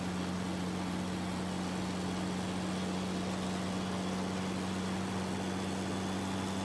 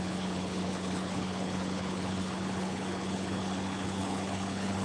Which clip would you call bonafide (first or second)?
first